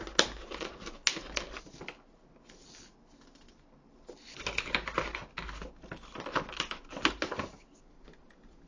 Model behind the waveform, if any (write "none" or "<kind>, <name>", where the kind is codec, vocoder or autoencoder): none